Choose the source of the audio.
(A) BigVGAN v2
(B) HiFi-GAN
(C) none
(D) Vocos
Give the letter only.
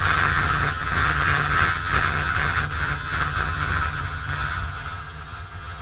B